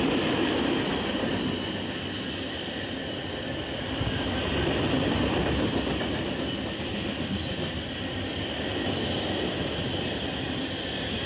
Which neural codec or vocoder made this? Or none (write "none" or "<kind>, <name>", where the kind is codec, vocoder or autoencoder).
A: none